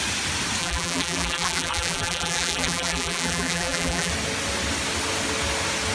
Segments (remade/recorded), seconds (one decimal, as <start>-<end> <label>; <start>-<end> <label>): 0.0-0.6 recorded; 0.6-4.1 remade; 4.1-5.9 recorded